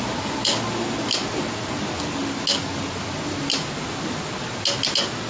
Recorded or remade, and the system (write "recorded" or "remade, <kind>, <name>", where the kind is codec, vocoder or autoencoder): recorded